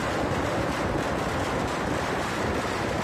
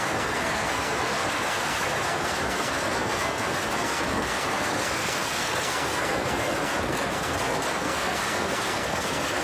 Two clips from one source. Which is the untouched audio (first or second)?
first